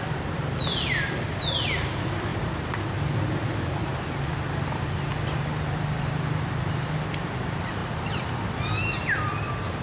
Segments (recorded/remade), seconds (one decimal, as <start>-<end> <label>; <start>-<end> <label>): 0.0-9.8 recorded